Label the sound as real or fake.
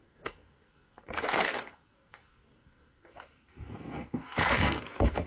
fake